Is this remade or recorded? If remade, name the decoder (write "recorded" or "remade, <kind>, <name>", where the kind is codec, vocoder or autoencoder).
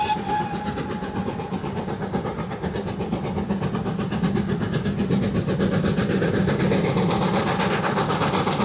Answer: recorded